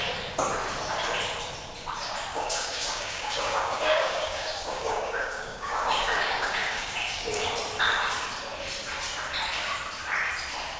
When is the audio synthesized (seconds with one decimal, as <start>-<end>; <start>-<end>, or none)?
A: 2.3-7.5